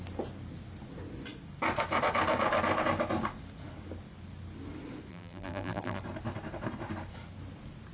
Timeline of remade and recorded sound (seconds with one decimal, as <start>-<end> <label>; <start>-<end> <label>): 0.0-5.1 recorded; 5.1-6.0 remade; 6.0-7.9 recorded